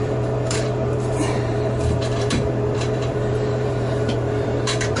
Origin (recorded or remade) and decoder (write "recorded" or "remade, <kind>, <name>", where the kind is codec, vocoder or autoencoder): remade, vocoder, BigVGAN v2